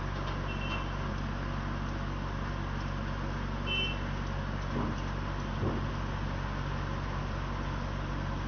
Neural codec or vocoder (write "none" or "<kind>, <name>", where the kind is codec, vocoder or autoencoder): none